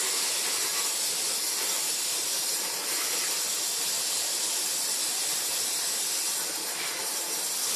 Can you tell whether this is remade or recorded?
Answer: recorded